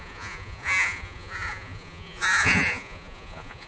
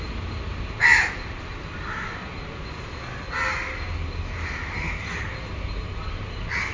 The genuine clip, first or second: second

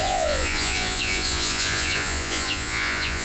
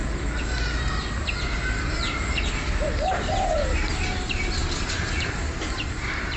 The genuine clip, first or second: second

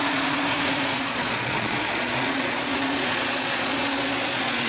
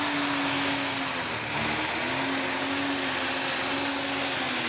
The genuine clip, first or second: second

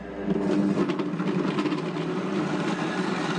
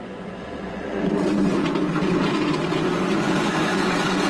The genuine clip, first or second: first